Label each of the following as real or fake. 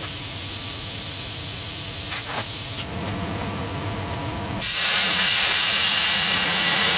fake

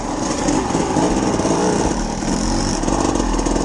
real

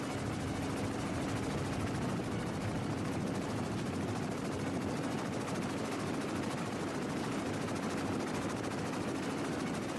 real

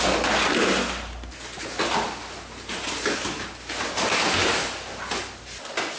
real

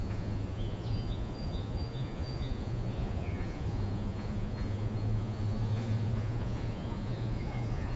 fake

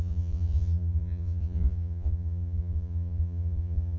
fake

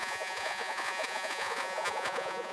fake